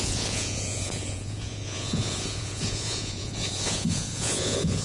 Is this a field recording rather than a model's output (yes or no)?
no